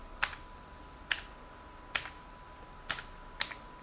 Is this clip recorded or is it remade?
recorded